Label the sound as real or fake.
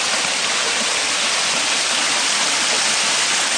real